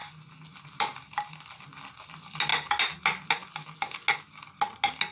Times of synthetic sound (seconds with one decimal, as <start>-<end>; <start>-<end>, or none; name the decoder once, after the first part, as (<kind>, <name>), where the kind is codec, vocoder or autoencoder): none